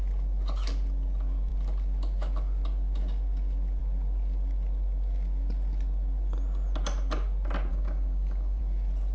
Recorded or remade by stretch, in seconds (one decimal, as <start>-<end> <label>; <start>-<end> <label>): 0.0-7.7 recorded; 7.7-8.6 remade; 8.6-9.1 recorded